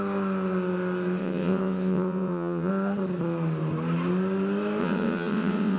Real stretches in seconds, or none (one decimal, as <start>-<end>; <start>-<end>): 0.0-1.2; 2.7-4.8